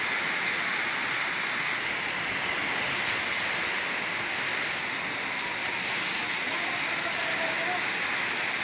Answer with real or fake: real